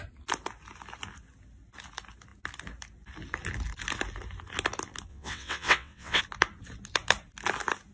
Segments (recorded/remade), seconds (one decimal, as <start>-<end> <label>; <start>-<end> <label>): 0.0-5.1 recorded; 5.1-6.2 remade; 6.2-7.9 recorded